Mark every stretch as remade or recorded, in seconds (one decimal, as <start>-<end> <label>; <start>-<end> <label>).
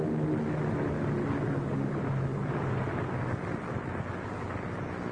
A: 0.0-5.1 recorded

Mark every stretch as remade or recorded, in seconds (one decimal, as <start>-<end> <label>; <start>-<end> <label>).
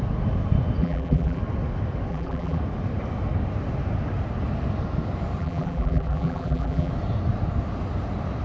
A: 0.0-0.8 recorded; 0.8-1.4 remade; 1.4-2.1 recorded; 2.1-2.6 remade; 2.6-5.4 recorded; 5.4-6.9 remade; 6.9-8.4 recorded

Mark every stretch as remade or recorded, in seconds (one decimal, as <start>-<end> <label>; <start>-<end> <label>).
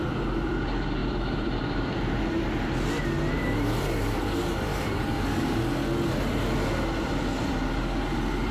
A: 0.0-1.0 recorded; 1.0-2.2 remade; 2.2-4.7 recorded; 4.7-5.6 remade; 5.6-8.5 recorded